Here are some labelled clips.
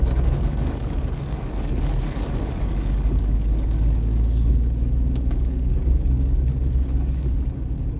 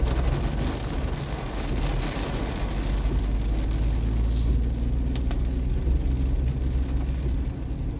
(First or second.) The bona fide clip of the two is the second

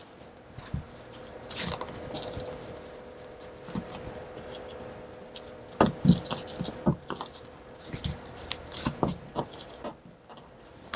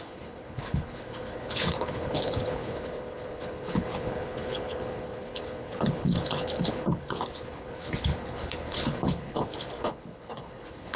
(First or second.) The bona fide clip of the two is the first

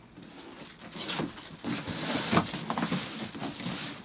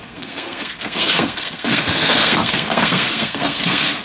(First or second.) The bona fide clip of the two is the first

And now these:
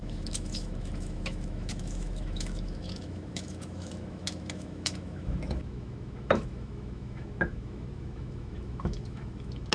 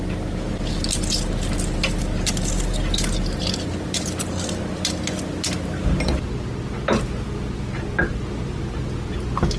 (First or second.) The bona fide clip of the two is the second